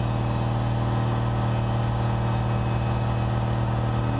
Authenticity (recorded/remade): recorded